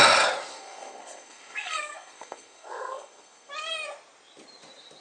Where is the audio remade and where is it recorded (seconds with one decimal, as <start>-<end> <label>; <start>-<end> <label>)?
0.0-0.5 recorded; 0.5-3.5 remade; 3.5-5.0 recorded